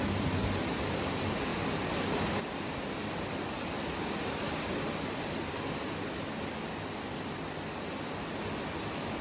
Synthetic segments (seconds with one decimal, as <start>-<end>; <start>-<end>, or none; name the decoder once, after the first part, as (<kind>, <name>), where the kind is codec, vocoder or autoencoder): none

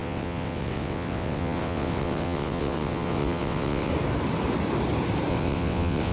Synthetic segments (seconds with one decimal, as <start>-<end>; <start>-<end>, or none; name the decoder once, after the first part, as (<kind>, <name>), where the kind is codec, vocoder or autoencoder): 0.0-3.9 (vocoder, WaveNeXt); 5.3-6.1